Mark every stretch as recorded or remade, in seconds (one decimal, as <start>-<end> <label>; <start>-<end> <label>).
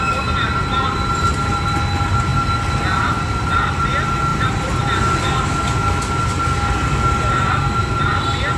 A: 0.0-4.3 recorded; 4.3-5.5 remade; 5.5-8.6 recorded